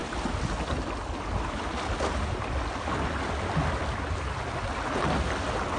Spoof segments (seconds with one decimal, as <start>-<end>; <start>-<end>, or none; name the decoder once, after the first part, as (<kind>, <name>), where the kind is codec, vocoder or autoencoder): none